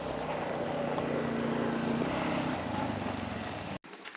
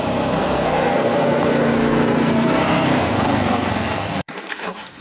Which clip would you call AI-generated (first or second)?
second